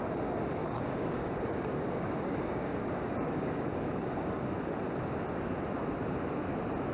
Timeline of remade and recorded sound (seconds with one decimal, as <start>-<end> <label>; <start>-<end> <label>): 0.0-0.6 recorded; 0.6-4.7 remade; 4.7-6.9 recorded